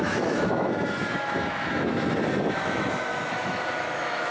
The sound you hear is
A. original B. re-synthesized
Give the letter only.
B